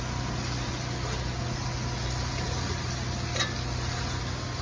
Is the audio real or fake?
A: real